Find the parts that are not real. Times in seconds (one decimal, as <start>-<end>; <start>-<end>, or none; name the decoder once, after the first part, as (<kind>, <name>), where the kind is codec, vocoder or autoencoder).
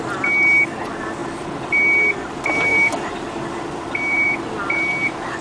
1.2-1.8 (vocoder, BigVGAN v2); 2.7-4.9